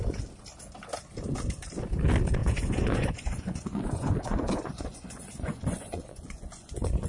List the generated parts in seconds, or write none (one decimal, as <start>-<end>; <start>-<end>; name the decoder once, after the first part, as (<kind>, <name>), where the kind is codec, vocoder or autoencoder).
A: 2.4-7.1 (vocoder, Vocos)